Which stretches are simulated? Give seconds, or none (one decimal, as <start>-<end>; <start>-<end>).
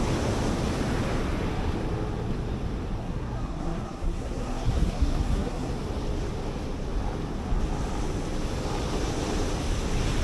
3.0-5.7